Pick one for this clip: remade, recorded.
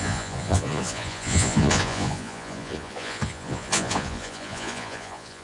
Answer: remade